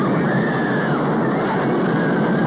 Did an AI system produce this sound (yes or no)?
no